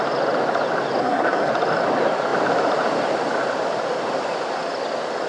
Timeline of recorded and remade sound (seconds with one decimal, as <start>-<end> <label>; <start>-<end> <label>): 0.0-1.0 recorded; 1.0-1.5 remade; 1.5-5.3 recorded